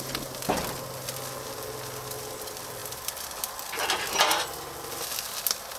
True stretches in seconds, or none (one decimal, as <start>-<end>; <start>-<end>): 0.0-5.8